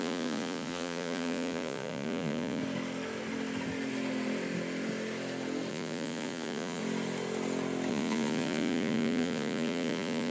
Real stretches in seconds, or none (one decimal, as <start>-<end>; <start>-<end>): 2.6-5.7; 6.8-7.9